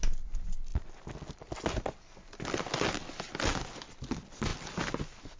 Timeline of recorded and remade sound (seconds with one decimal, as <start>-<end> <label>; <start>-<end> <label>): 0.0-5.4 recorded